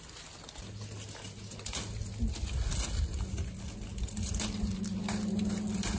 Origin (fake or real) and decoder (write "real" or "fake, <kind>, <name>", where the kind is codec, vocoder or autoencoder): real